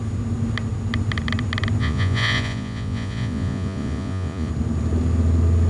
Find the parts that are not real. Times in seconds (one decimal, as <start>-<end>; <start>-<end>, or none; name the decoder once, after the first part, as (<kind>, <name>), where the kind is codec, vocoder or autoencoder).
1.8-4.5 (vocoder, Vocos)